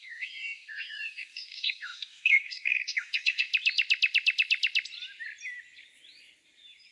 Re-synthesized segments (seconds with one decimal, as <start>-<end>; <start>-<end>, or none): 0.0-3.5